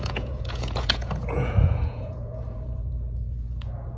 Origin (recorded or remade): remade